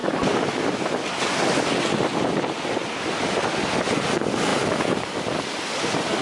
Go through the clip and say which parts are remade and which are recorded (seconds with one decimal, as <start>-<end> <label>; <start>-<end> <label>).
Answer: 0.0-6.2 recorded